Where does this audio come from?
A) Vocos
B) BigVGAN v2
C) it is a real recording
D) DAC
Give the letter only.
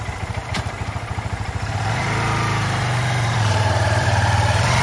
B